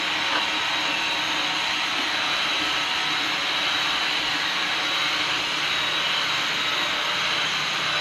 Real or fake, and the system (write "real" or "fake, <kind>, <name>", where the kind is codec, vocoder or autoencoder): real